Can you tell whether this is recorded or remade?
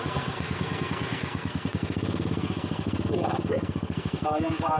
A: remade